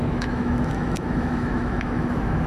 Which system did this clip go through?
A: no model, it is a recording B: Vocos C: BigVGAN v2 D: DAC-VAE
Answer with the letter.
D